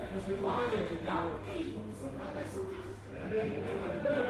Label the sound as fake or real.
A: fake